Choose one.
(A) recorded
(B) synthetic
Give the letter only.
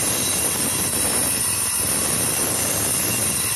A